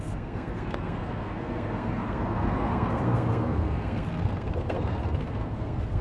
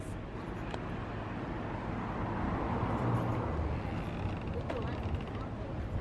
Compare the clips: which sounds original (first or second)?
second